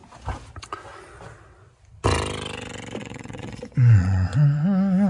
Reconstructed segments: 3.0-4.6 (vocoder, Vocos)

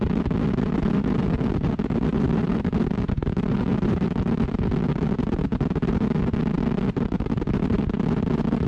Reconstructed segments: 2.1-3.5 (vocoder, BigVGAN v2); 5.5-6.0